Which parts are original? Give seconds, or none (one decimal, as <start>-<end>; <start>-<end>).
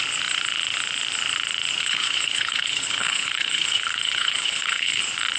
0.0-1.8; 5.0-5.4